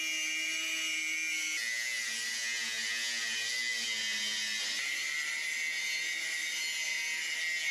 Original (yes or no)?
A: yes